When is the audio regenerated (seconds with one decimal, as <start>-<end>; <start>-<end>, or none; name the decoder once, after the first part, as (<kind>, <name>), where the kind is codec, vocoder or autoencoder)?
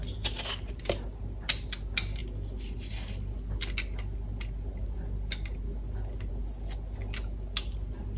none